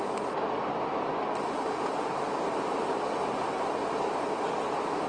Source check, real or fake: real